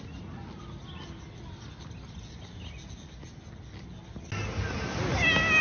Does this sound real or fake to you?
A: real